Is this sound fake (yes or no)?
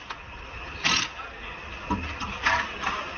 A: no